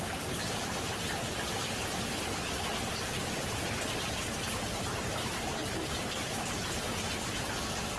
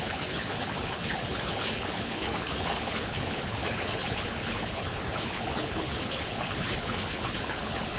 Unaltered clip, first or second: first